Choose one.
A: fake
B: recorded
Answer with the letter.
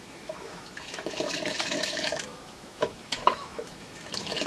A